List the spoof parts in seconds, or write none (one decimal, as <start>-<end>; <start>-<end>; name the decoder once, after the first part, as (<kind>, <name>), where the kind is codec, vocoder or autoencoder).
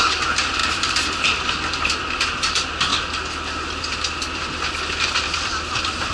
0.0-6.1 (vocoder, BigVGAN v2)